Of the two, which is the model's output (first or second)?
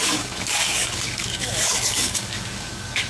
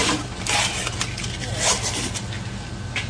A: first